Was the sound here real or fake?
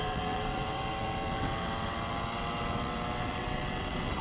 fake